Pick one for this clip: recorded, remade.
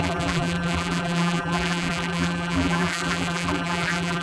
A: remade